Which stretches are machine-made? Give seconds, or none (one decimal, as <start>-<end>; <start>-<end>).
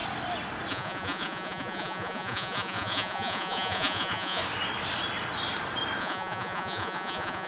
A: 0.7-4.4; 6.0-7.5